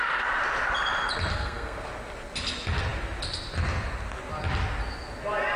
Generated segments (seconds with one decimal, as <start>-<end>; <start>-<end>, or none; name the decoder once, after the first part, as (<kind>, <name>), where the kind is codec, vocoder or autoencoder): 1.3-1.9 (codec, SNAC)

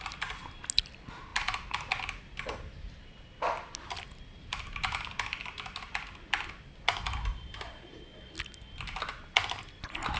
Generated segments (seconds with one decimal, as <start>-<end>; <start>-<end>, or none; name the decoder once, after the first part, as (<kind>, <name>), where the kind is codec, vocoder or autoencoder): none